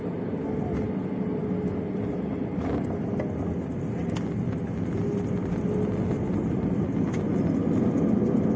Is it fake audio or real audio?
real